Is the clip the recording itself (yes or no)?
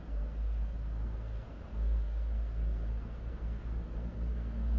no